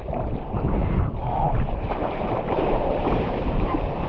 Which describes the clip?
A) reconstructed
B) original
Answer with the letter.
A